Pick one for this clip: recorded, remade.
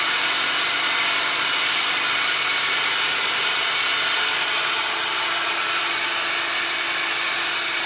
recorded